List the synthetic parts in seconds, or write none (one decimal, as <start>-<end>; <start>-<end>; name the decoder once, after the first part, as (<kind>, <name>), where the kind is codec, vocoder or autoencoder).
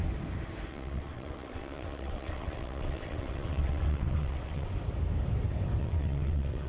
0.7-4.7 (vocoder, WaveNeXt); 5.8-6.7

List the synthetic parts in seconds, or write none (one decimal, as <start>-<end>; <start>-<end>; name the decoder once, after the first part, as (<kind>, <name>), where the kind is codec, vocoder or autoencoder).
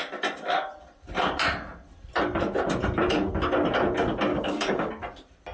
4.3-4.9 (codec, DAC)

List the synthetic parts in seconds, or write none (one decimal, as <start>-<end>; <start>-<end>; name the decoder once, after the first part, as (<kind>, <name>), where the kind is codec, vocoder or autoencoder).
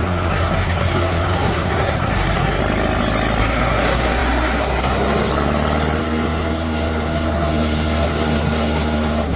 0.0-2.6 (codec, SNAC); 3.4-5.3; 6.0-9.4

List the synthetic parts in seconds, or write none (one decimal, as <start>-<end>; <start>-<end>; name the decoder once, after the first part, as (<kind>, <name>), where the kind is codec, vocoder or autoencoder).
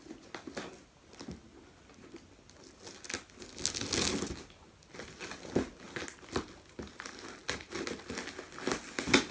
none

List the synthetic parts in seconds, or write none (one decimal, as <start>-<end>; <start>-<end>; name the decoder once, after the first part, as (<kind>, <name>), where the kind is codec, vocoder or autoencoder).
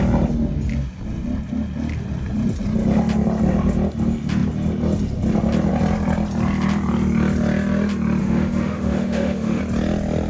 8.2-9.6 (autoencoder, DAC-VAE)